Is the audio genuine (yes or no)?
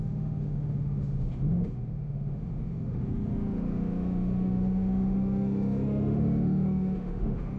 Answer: no